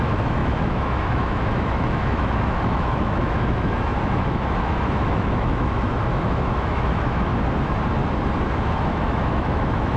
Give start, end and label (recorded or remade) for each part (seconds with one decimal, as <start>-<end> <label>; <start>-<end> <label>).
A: 0.0-7.3 remade; 7.3-8.7 recorded; 8.7-10.0 remade